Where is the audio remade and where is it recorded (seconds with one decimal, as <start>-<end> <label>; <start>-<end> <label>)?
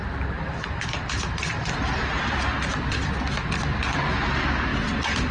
0.0-0.5 recorded; 0.5-2.3 remade; 2.3-4.7 recorded; 4.7-5.3 remade